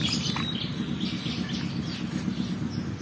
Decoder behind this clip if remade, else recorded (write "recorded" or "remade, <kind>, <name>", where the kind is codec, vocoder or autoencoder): recorded